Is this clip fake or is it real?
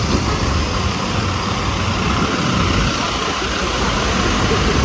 real